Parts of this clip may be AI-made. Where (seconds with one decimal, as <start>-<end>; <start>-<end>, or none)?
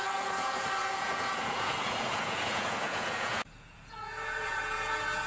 0.0-5.3